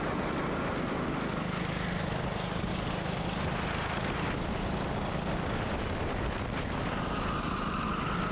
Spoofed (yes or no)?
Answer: no